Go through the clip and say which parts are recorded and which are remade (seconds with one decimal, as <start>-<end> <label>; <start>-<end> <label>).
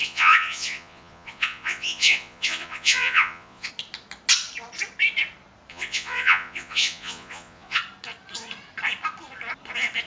0.0-3.7 remade; 3.7-5.7 recorded; 5.7-7.8 remade; 7.8-10.1 recorded